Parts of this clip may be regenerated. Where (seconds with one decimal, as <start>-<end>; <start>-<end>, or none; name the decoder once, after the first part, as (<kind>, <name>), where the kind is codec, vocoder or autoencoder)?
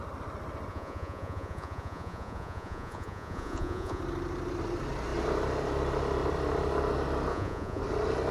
0.7-4.0 (vocoder, Vocos); 7.3-7.8